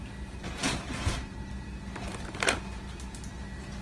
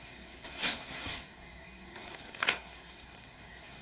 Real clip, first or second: first